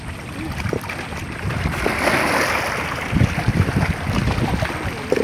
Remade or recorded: recorded